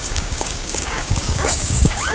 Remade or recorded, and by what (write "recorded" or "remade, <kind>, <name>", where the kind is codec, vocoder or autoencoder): remade, codec, DAC